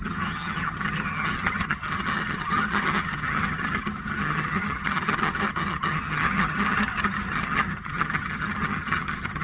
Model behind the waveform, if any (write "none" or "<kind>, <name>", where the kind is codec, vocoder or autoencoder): vocoder, HiFi-GAN